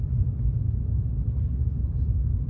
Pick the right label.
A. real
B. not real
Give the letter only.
A